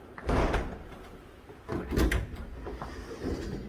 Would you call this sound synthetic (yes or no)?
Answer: no